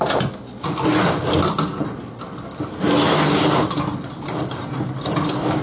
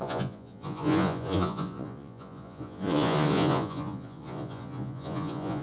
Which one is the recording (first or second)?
first